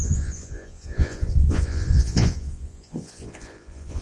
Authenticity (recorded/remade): remade